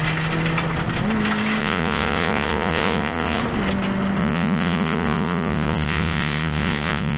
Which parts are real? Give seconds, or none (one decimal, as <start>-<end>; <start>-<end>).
0.0-1.6; 3.4-4.2